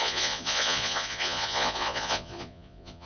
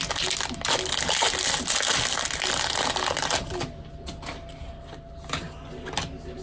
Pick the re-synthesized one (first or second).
first